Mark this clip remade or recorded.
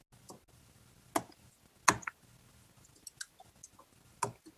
recorded